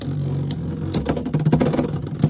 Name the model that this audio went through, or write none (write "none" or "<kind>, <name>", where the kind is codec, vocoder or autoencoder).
none